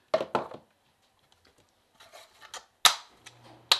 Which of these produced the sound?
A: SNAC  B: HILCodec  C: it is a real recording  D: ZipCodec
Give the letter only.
C